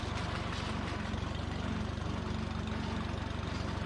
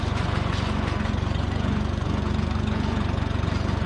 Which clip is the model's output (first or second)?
second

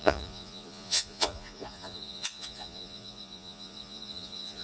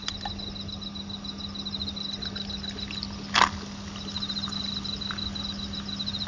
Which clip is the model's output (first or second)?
first